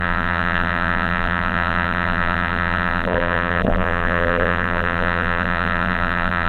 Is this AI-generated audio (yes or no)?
yes